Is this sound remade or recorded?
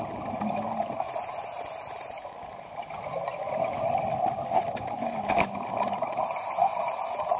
recorded